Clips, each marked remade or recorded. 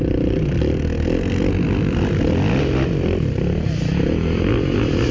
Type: recorded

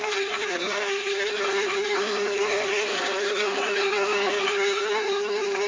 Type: remade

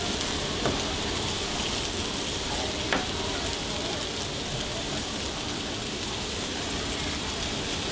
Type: recorded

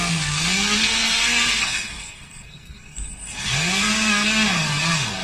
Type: remade